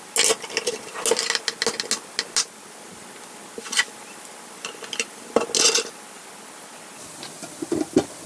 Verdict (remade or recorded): recorded